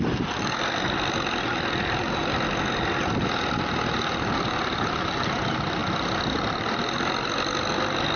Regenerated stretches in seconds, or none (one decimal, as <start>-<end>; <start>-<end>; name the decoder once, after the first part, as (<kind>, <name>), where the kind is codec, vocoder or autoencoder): none